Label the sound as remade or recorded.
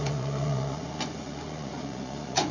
remade